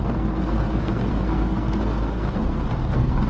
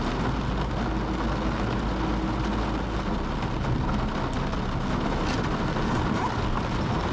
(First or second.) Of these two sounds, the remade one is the first